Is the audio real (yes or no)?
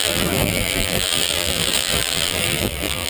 no